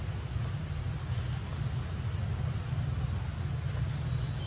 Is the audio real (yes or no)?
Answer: yes